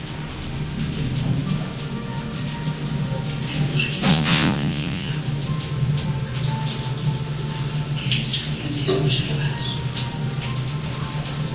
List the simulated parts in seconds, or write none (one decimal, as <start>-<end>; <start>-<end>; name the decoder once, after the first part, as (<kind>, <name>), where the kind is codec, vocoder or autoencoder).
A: 4.1-5.1 (vocoder, Vocos)

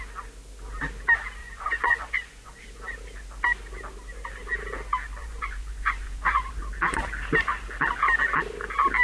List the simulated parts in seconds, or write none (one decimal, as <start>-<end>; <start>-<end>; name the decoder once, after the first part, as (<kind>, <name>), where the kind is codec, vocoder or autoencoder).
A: 1.4-2.6 (vocoder, Vocos); 5.2-6.5

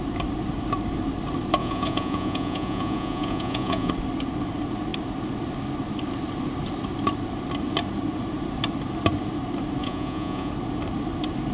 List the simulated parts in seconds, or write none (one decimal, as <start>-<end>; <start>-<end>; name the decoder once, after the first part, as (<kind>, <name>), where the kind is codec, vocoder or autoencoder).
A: 1.6-3.9 (vocoder, Vocos); 9.8-10.5

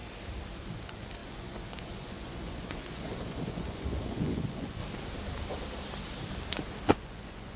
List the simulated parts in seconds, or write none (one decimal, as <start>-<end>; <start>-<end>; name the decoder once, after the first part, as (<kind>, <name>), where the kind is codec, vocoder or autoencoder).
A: 0.6-4.8 (vocoder, Vocos); 6.9-7.6